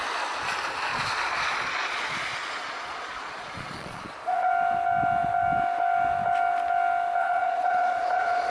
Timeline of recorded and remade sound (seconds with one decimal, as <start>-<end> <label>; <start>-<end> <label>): 0.0-0.9 recorded; 0.9-4.5 remade; 4.5-7.2 recorded; 7.2-8.5 remade